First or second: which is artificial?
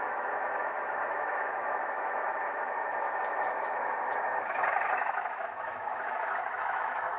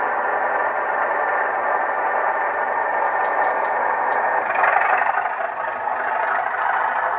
first